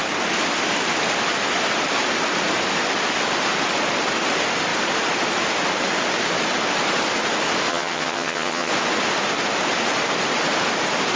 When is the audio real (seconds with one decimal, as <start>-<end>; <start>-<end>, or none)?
0.0-7.7; 8.7-11.2